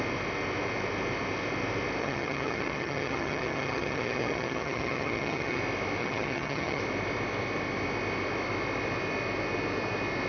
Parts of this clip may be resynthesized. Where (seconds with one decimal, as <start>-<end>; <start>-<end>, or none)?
2.0-5.6; 6.0-6.8